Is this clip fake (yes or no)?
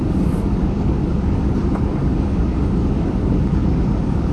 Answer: yes